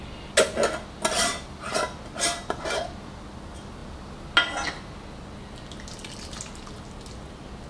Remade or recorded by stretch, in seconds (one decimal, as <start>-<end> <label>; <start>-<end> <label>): 0.0-7.7 recorded